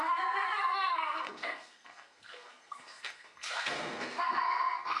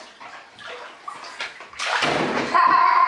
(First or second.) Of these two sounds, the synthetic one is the first